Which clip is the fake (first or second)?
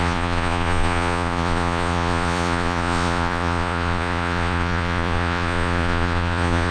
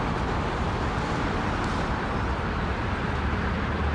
first